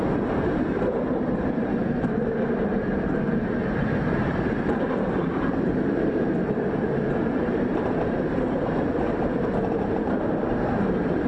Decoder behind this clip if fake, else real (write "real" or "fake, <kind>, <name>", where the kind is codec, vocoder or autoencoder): fake, vocoder, BigVGAN v2